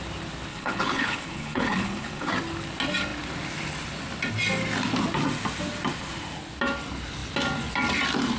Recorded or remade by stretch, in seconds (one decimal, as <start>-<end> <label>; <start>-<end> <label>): 0.0-0.5 recorded; 0.5-2.3 remade; 2.3-8.4 recorded